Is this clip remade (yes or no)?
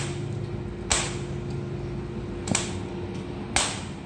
no